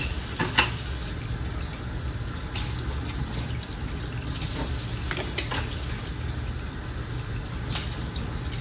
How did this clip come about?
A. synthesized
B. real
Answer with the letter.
B